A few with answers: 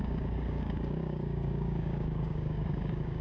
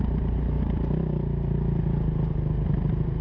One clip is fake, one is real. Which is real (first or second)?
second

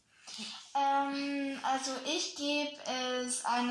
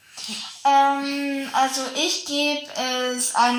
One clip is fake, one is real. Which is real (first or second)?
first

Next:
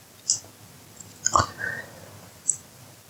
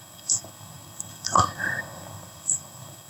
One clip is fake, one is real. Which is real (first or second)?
first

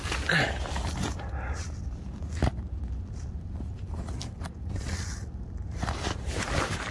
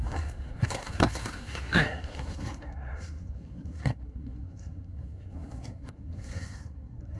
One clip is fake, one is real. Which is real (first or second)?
first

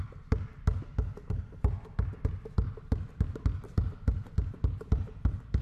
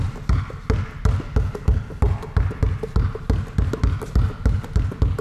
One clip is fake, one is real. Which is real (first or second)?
second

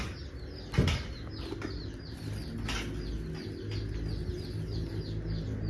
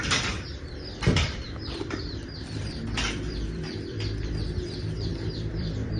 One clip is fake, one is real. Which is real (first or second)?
first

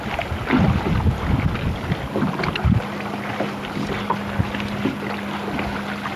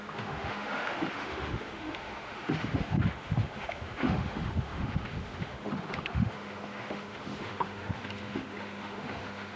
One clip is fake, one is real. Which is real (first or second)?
first